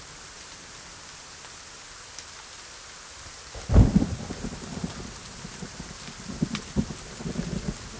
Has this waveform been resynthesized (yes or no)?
no